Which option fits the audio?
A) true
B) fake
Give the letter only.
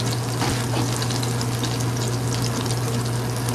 A